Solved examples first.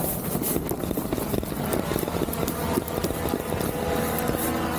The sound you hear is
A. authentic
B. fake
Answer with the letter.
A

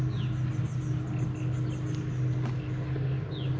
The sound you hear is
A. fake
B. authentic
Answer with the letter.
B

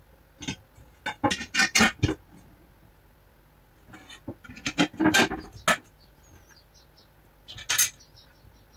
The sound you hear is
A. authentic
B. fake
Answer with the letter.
A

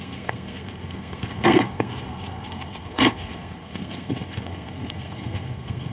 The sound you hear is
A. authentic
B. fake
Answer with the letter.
B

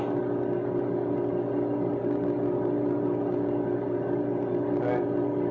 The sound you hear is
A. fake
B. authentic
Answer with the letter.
B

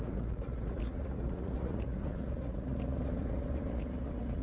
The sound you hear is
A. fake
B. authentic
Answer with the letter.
A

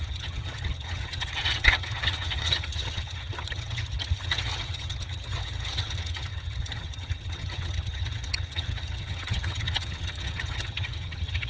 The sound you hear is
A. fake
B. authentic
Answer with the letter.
A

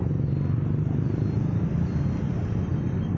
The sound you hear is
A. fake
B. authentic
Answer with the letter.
B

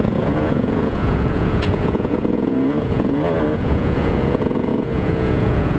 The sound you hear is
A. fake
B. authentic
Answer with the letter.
A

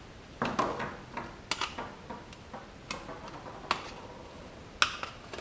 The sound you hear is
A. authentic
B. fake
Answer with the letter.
A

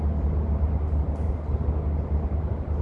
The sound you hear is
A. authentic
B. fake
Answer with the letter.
A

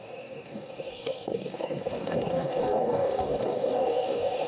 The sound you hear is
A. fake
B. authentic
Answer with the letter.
A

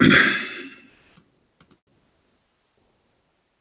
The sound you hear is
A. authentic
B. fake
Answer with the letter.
A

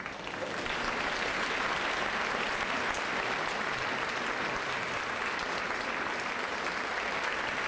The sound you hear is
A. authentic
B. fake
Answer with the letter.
A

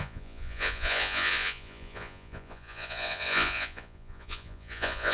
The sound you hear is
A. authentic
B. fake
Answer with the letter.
B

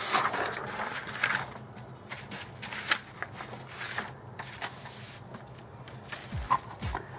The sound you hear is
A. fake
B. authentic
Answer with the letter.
B